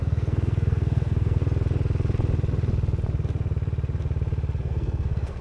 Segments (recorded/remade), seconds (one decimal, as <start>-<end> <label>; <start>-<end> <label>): 0.0-1.4 remade; 1.4-4.6 recorded; 4.6-5.4 remade